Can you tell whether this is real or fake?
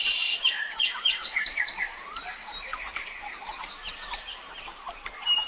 fake